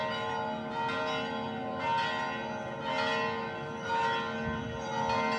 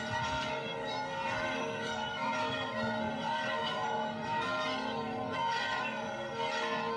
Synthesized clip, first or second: second